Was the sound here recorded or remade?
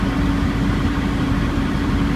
remade